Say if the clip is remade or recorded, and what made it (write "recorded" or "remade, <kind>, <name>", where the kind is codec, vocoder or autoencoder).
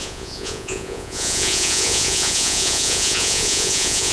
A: remade, vocoder, Vocos